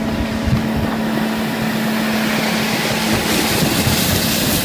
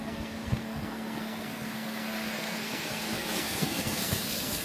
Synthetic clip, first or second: second